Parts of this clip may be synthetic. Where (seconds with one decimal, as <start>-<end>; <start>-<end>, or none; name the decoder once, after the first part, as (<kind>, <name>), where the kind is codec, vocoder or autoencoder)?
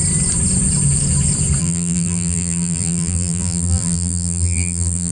1.6-5.1 (vocoder, BigVGAN v2)